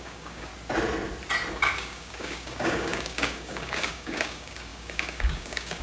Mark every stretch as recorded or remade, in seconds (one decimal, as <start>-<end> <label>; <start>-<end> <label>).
0.0-0.5 remade; 0.5-1.5 recorded; 1.5-5.8 remade